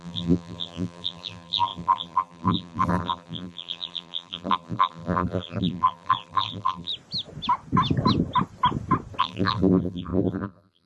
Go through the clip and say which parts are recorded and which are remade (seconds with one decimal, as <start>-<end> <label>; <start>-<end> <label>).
0.0-6.9 remade; 6.9-9.2 recorded; 9.2-10.9 remade